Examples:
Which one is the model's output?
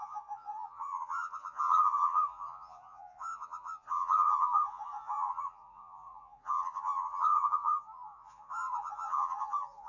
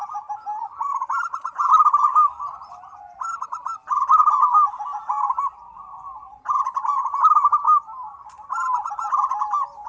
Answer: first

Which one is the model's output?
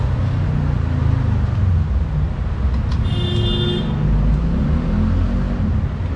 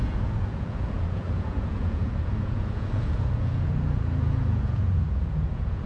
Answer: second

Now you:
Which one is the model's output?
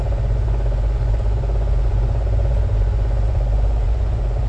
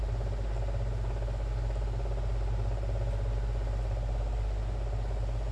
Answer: first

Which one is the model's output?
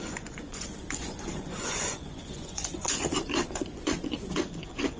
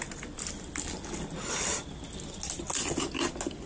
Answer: first